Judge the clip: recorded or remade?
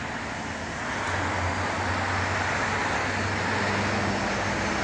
recorded